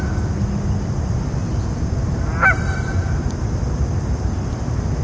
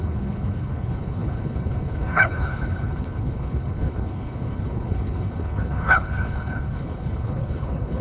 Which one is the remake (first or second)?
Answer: second